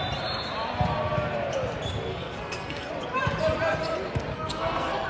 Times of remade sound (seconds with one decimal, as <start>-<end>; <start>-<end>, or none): 2.1-2.9; 4.3-5.1